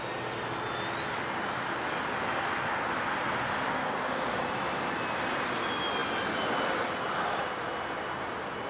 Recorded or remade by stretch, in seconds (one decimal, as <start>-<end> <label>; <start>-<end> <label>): 0.0-3.8 recorded; 3.8-4.4 remade; 4.4-8.7 recorded